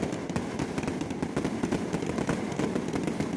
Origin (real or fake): fake